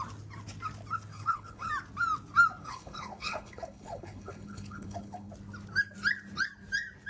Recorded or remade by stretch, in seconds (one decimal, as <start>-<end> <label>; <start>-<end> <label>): 0.0-1.1 recorded; 1.1-1.7 remade; 1.7-2.6 recorded; 2.6-5.3 remade; 5.3-7.1 recorded